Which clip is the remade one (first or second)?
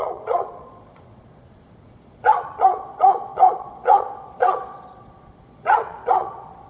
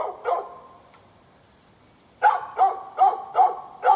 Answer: first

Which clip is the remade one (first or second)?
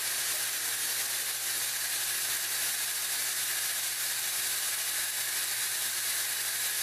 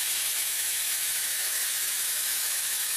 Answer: second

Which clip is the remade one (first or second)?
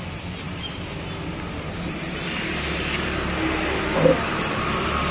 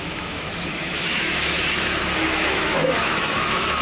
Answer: second